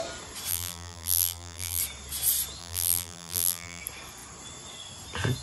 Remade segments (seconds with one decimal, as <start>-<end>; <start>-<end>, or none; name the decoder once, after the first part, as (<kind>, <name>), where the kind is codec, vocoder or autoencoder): 0.5-1.8 (vocoder, BigVGAN v2); 2.6-3.8